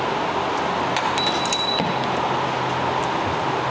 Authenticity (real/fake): real